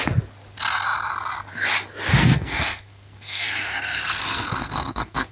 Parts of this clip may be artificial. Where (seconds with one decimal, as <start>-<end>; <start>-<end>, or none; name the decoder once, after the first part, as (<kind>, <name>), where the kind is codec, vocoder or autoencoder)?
2.2-5.3 (codec, SNAC)